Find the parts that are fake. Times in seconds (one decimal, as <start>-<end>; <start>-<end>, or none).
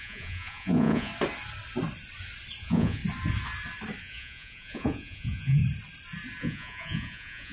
0.0-1.1; 2.6-3.0; 4.0-5.6; 6.4-7.5